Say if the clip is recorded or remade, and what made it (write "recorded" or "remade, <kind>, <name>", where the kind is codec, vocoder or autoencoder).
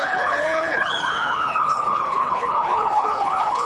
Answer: remade, codec, HILCodec